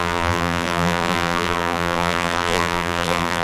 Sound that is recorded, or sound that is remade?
remade